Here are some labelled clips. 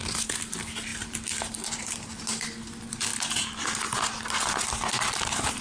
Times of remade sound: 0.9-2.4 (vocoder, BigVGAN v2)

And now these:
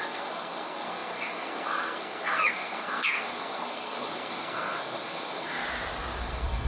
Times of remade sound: 0.0-5.6 (codec, SNAC); 6.2-6.7

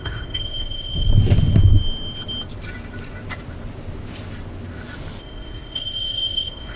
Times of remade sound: 0.0-1.1 (codec, ZipCodec); 5.2-6.8

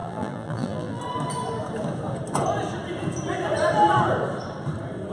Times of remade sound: 0.0-1.0 (vocoder, BigVGAN v2)